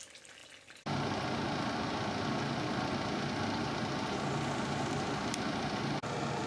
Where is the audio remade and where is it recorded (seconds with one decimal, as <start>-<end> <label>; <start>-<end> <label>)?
0.0-6.5 recorded